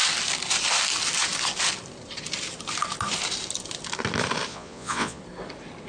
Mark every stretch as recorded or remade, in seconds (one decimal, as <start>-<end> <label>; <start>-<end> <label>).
0.0-4.5 recorded; 4.5-5.2 remade; 5.2-5.9 recorded